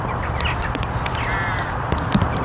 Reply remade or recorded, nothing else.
remade